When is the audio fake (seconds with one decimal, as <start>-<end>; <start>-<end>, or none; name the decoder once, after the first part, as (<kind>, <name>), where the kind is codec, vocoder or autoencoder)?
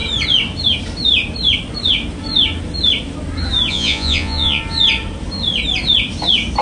3.7-4.6 (vocoder, Vocos)